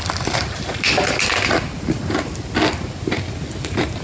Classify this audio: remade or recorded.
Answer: recorded